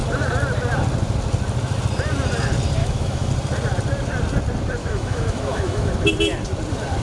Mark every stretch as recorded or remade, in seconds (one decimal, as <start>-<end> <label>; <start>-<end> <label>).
0.0-2.8 recorded; 2.8-3.3 remade; 3.3-4.8 recorded; 4.8-5.9 remade; 5.9-7.0 recorded